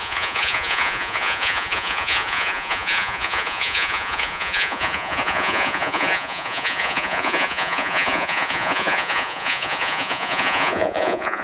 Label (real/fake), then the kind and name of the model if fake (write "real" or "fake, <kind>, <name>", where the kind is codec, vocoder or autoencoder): fake, vocoder, Vocos